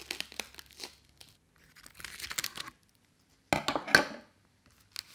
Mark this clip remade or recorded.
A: recorded